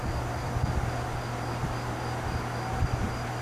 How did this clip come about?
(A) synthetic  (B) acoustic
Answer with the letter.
B